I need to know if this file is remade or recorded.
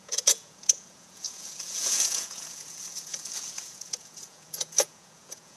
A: remade